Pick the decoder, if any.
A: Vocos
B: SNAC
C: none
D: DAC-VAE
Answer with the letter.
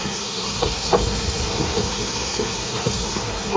B